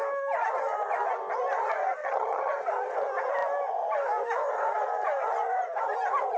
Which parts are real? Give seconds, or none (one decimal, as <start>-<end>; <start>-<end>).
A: 0.0-2.0; 2.5-6.4